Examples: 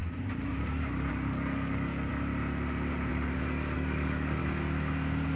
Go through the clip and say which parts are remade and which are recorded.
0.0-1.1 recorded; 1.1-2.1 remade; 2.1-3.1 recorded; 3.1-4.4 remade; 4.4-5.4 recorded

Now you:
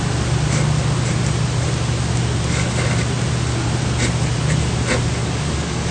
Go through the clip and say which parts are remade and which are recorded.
0.0-5.2 recorded; 5.2-5.9 remade